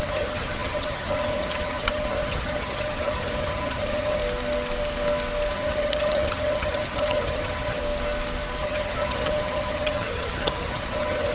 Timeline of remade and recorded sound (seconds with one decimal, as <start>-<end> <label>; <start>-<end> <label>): 0.0-4.2 remade; 4.2-5.5 recorded; 5.5-7.8 remade; 7.8-8.6 recorded; 8.6-11.3 remade